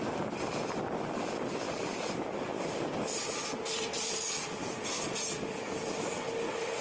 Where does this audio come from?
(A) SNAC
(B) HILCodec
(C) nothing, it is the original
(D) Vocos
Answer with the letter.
C